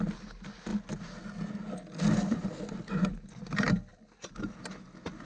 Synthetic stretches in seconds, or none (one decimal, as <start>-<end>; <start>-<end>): none